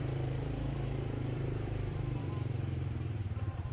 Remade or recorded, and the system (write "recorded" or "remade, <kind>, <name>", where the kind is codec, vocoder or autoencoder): remade, vocoder, BigVGAN v2